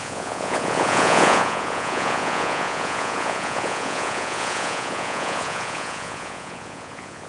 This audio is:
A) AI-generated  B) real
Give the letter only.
A